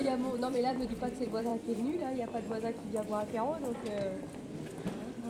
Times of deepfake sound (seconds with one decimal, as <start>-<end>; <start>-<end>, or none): 0.0-1.5; 4.7-5.3